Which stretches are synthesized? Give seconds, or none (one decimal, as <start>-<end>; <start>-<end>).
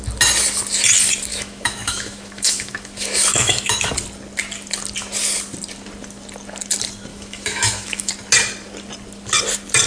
1.3-3.9; 7.1-8.1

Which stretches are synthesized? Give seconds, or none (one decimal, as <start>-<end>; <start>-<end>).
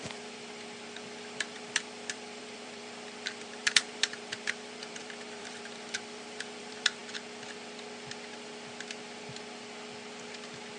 0.0-7.0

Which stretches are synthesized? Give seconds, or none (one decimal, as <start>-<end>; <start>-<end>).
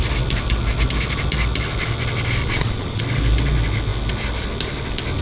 2.4-3.0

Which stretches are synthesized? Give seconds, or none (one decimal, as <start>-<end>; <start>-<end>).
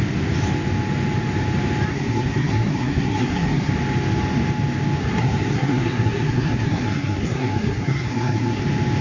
1.9-3.7; 5.0-8.6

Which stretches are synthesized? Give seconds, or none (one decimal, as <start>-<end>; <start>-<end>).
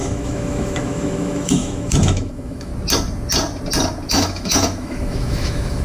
0.0-2.7; 4.1-5.8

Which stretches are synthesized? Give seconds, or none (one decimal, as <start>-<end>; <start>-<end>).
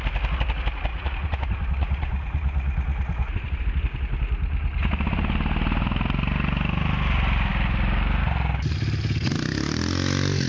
0.9-3.6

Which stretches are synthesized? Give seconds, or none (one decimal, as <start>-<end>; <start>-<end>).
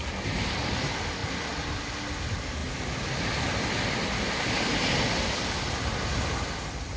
none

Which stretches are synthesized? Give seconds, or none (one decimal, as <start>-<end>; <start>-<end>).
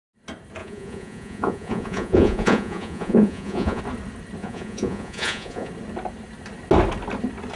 0.6-3.8; 4.4-5.7